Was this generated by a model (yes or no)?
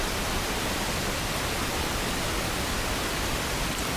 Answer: no